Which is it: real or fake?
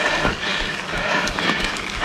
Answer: fake